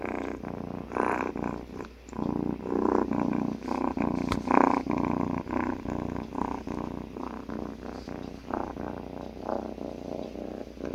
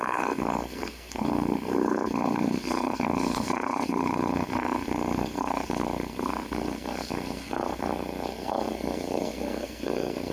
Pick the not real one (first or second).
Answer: second